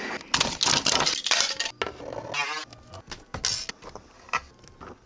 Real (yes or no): yes